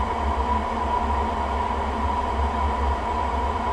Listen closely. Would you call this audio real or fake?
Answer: real